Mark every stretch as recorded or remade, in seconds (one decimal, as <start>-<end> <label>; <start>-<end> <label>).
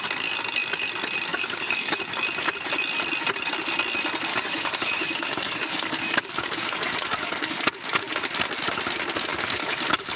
0.0-1.3 recorded; 1.3-2.0 remade; 2.0-4.3 recorded; 4.3-8.1 remade; 8.1-9.3 recorded; 9.3-10.2 remade